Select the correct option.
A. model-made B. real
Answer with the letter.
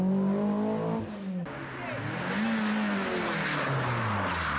B